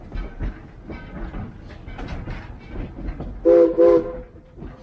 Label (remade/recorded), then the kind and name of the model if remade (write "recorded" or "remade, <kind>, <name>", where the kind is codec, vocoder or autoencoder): recorded